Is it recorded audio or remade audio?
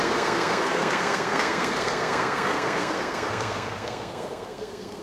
remade